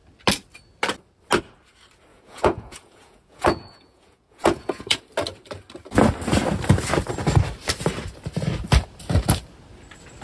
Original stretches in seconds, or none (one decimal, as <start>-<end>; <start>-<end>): 0.0-2.1; 5.0-10.2